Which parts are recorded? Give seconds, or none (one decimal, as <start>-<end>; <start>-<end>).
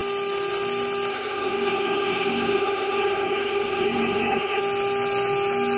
0.0-1.1; 4.6-5.8